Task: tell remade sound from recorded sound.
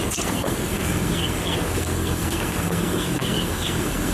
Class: remade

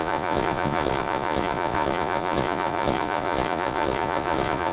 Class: remade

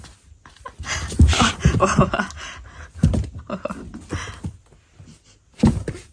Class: recorded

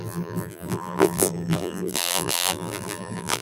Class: remade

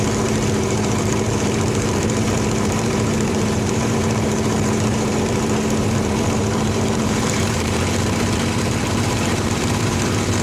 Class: remade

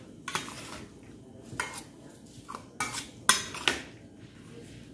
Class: recorded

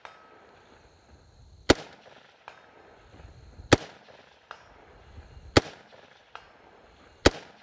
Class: recorded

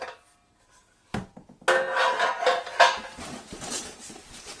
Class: recorded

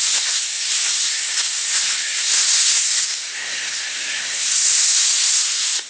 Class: remade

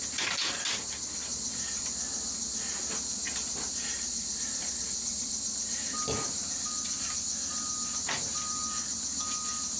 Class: recorded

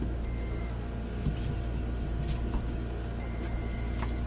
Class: recorded